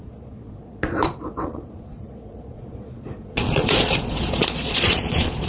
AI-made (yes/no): yes